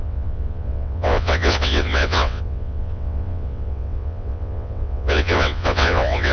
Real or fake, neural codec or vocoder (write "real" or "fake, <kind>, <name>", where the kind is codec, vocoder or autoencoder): fake, vocoder, WaveNeXt